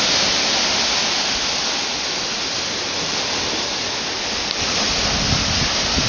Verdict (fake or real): real